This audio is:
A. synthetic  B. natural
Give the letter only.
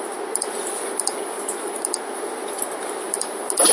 B